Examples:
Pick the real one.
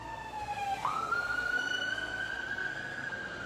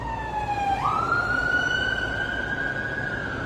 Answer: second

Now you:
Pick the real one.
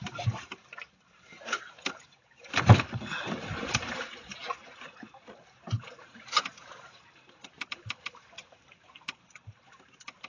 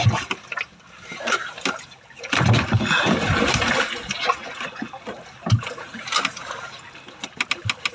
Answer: second